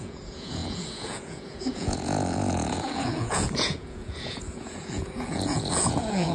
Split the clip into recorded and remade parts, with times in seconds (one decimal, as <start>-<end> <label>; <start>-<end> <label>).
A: 0.0-6.3 remade